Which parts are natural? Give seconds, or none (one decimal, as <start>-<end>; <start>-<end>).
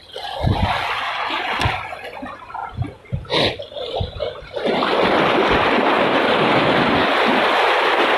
0.0-8.2